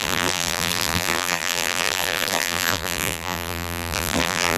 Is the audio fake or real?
fake